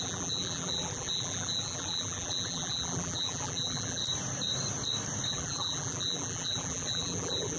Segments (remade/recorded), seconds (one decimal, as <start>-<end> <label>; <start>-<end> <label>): 0.0-4.0 remade; 4.0-5.3 recorded; 5.3-7.6 remade